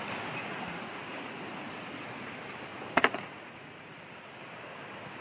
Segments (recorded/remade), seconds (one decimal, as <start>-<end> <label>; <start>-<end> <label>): 0.0-0.5 recorded; 0.5-1.5 remade; 1.5-2.7 recorded; 2.7-4.0 remade; 4.0-5.2 recorded